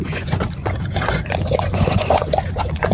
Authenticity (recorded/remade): remade